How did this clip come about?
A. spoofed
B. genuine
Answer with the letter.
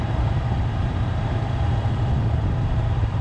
A